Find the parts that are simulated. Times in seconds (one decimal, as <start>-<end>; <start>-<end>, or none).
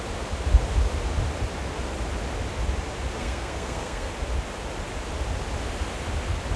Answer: 3.2-4.1